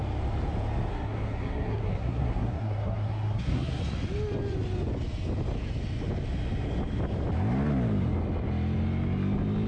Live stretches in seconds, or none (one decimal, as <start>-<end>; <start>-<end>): 0.0-0.9; 3.8-9.7